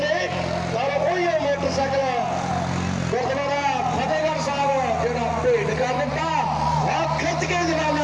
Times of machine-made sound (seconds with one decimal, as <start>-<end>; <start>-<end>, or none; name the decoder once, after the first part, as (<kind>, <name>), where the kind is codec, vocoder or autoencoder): none